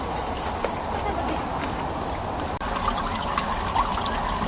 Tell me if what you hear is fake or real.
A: real